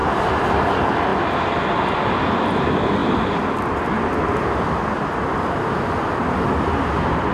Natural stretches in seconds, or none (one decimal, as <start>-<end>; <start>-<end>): 0.0-7.3